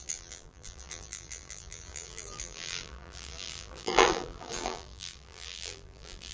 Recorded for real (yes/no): no